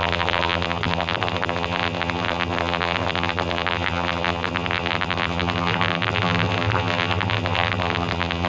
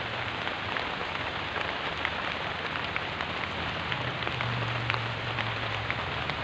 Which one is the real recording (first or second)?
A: second